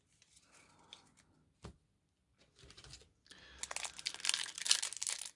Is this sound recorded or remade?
recorded